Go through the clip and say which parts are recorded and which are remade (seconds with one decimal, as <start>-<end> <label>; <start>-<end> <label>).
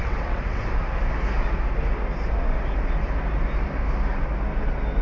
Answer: 0.0-0.6 remade; 0.6-5.0 recorded